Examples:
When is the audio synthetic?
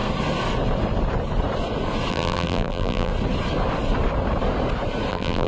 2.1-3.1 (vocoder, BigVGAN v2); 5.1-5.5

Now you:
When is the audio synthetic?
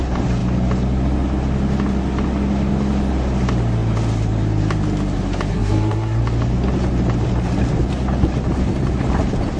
5.5-6.2 (codec, SNAC)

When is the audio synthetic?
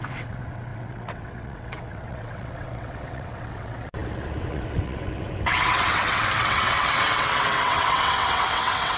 0.0-9.0 (vocoder, WaveNeXt)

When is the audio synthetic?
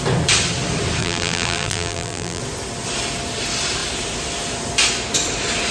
1.0-2.4 (vocoder, BigVGAN v2)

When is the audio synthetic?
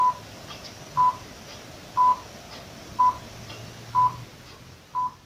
none